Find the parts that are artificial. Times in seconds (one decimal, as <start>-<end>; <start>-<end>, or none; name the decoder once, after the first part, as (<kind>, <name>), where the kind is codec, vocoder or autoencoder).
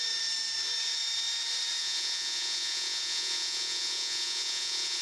1.8-5.0 (vocoder, Vocos)